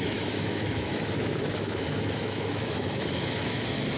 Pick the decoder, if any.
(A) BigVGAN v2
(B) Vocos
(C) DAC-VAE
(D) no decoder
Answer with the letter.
C